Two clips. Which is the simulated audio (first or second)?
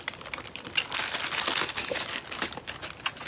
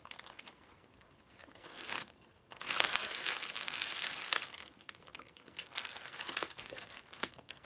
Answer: second